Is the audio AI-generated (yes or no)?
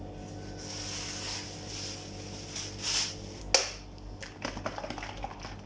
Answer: no